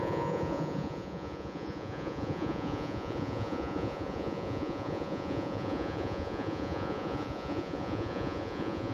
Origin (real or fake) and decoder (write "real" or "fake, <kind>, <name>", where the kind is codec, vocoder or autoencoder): fake, vocoder, Vocos